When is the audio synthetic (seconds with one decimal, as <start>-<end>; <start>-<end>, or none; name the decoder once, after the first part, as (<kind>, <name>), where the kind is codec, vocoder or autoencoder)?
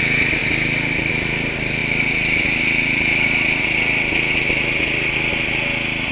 none